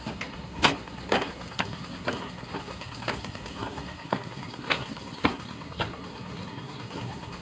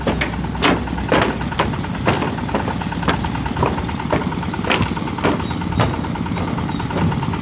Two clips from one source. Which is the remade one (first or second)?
first